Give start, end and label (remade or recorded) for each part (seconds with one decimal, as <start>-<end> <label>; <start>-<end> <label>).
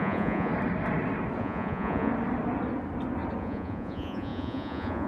0.0-0.5 remade; 0.5-1.4 recorded; 1.4-2.1 remade; 2.1-3.4 recorded; 3.4-5.1 remade